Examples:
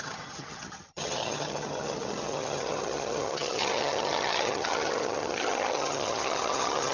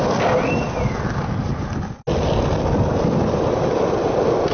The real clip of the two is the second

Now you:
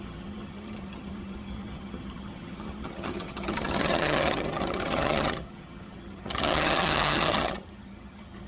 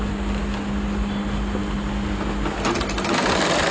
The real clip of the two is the second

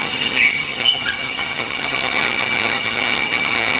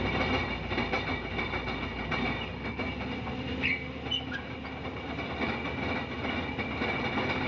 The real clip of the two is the second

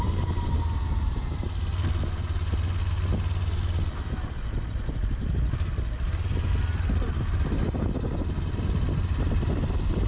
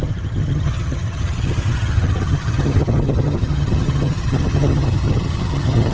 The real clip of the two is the first